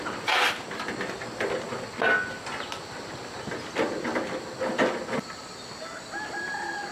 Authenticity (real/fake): real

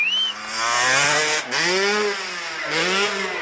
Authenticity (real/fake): real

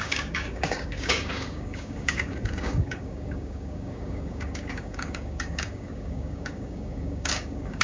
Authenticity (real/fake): fake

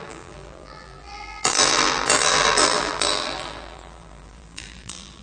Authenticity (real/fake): fake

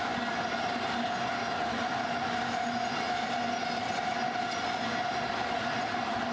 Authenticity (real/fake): real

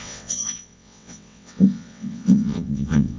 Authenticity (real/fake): fake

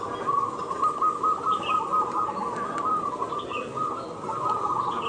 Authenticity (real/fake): real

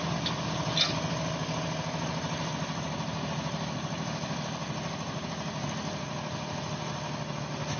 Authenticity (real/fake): real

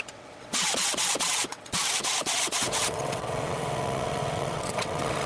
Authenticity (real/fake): fake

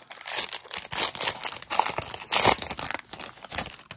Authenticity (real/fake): real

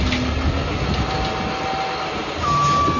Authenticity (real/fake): real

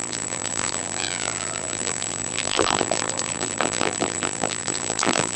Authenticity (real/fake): fake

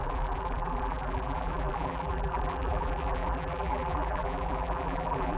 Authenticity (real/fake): fake